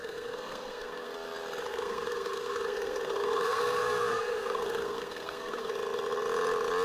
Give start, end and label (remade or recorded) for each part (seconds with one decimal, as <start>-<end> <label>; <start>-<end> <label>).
0.0-1.1 remade; 1.1-1.6 recorded; 1.6-5.7 remade; 5.7-6.8 recorded